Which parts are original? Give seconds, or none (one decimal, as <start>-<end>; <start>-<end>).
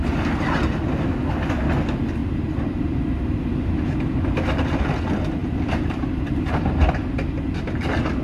0.0-2.2; 3.4-5.4; 6.9-8.2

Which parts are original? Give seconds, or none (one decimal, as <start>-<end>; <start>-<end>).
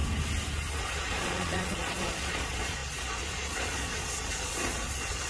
0.0-0.8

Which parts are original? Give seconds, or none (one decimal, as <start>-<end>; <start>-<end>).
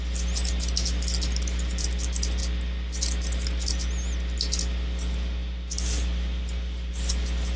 0.0-7.6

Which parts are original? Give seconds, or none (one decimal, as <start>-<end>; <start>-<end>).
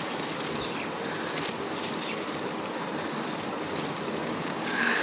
0.0-4.2